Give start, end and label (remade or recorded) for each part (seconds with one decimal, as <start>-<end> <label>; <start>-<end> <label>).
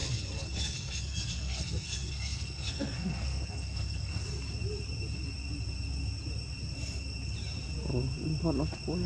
0.0-4.3 remade; 4.3-9.1 recorded